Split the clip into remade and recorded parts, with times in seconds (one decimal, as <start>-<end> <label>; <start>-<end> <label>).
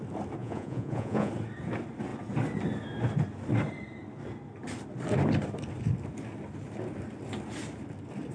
0.0-0.4 recorded; 0.4-1.3 remade; 1.3-8.3 recorded